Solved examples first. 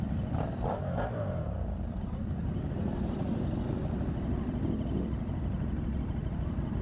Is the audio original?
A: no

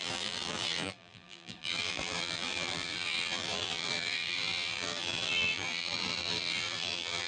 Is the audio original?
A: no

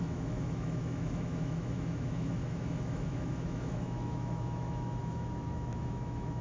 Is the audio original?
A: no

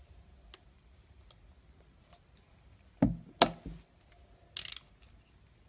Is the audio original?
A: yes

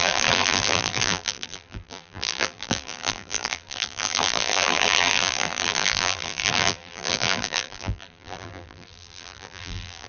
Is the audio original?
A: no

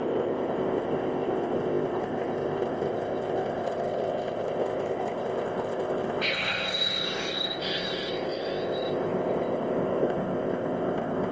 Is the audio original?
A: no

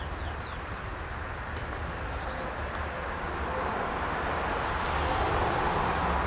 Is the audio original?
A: yes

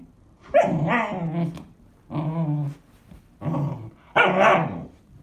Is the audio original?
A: yes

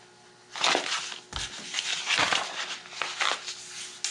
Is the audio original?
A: yes